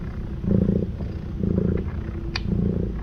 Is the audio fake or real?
real